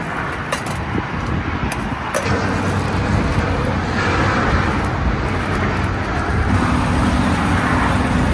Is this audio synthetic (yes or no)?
no